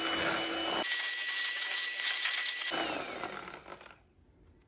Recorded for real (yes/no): yes